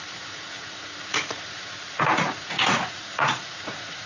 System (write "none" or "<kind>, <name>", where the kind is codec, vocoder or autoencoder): vocoder, Vocos